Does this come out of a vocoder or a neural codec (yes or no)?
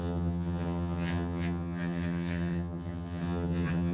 yes